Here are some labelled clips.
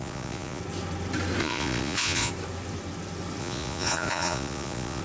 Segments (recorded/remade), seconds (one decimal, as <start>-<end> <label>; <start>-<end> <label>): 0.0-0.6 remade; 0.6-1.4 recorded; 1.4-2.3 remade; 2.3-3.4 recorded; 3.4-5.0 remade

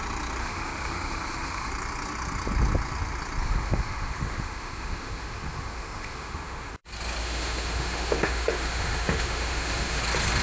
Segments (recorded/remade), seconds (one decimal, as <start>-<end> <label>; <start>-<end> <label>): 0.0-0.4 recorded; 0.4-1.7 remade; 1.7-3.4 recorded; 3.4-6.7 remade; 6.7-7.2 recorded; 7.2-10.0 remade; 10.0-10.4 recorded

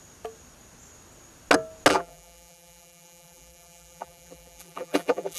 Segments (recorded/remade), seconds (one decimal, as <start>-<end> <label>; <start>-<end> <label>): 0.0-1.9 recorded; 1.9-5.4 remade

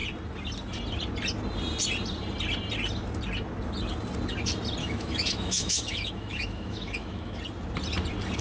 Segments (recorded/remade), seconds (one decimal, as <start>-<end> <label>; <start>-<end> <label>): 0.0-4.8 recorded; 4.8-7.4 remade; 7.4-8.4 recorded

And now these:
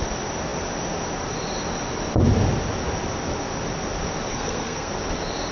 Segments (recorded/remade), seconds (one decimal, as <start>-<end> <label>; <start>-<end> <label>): 0.0-4.3 recorded; 4.3-4.9 remade; 4.9-5.5 recorded

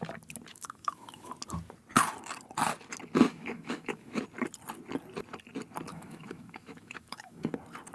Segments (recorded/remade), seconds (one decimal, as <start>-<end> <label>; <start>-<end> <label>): 0.0-0.5 recorded; 0.5-1.3 remade; 1.3-3.3 recorded; 3.3-4.2 remade; 4.2-5.9 recorded; 5.9-7.5 remade; 7.5-7.9 recorded